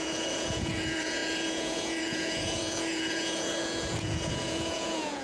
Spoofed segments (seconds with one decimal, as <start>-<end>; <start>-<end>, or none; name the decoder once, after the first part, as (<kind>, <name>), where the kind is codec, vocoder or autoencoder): 0.0-5.2 (vocoder, Vocos)